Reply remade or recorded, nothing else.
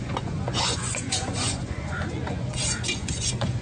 remade